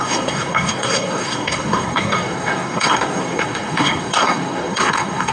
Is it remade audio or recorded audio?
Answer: remade